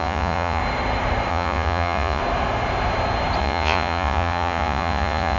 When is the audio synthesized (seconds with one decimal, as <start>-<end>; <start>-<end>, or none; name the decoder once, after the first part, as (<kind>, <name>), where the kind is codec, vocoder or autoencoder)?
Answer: 0.0-0.6 (vocoder, Vocos); 1.3-2.2; 3.4-5.4